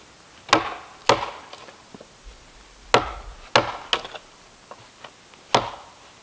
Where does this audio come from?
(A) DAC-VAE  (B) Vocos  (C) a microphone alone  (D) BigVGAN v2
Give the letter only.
C